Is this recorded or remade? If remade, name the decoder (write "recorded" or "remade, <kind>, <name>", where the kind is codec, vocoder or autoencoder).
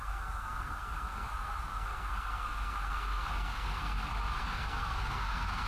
remade, codec, SNAC